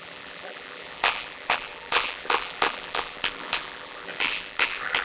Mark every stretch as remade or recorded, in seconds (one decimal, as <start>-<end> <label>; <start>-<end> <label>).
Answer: 0.0-5.0 remade